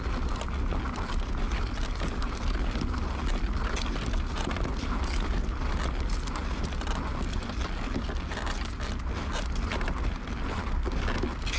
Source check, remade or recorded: recorded